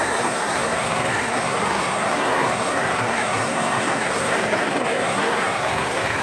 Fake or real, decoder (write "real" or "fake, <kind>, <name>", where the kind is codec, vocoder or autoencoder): fake, codec, SNAC